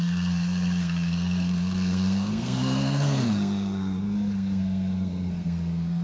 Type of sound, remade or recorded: remade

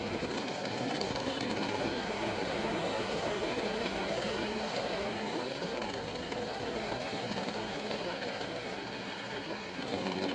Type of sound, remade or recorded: remade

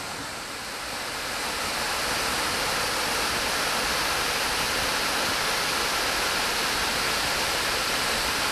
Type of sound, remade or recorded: recorded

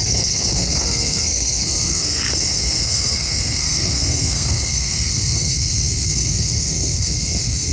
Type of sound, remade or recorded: remade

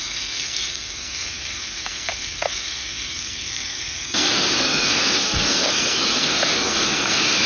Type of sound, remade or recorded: remade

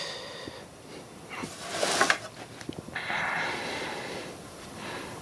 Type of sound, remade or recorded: recorded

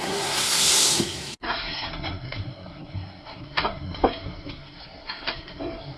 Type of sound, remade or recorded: remade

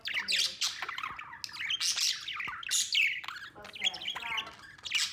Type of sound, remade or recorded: recorded